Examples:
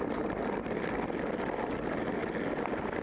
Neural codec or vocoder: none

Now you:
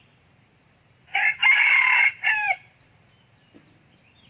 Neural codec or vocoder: vocoder, BigVGAN v2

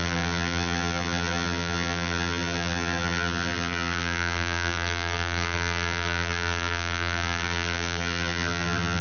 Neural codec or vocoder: vocoder, BigVGAN v2